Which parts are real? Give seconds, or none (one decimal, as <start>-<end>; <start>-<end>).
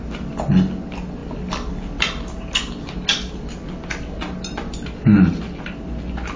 0.0-6.4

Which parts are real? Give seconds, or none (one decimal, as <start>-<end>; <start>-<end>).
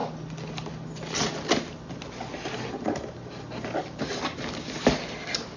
0.0-5.6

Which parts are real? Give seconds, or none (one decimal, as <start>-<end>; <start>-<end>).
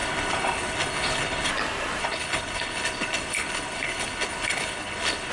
1.5-2.0